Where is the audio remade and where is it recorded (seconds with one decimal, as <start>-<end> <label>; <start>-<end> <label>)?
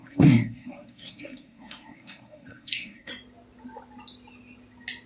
0.0-3.1 remade; 3.1-5.1 recorded